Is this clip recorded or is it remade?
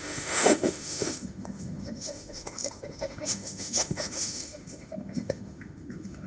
remade